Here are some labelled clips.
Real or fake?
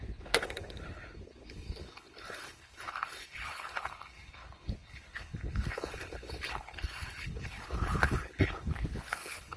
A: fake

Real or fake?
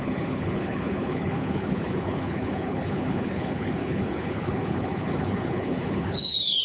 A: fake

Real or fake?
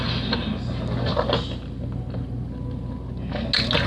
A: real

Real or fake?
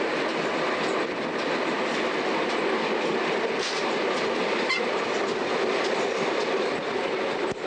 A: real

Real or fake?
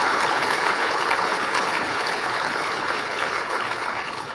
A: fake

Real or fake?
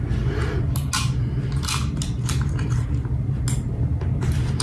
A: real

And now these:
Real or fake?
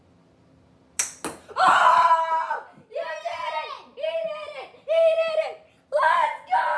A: real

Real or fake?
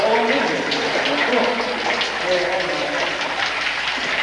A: real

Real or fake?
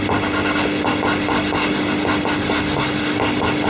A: real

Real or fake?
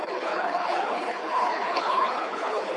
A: fake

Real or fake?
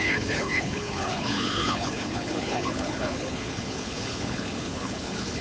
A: fake